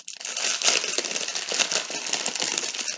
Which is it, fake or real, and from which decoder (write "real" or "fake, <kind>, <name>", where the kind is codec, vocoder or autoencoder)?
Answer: fake, vocoder, BigVGAN v2